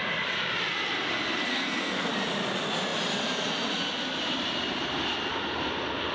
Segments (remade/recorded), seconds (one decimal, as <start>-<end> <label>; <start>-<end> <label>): 0.0-1.5 recorded; 1.5-2.1 remade; 2.1-6.1 recorded